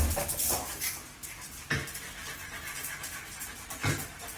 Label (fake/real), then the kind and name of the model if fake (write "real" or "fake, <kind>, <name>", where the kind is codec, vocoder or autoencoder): real